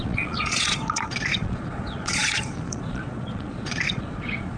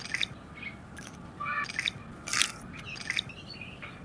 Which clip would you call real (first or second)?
second